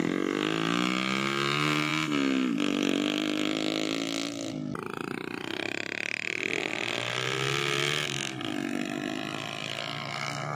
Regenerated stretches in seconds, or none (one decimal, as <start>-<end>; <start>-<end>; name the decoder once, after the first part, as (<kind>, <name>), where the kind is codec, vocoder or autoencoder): none